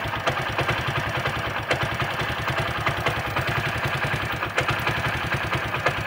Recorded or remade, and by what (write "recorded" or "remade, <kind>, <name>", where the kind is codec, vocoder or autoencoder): recorded